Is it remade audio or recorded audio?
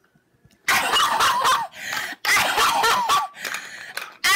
recorded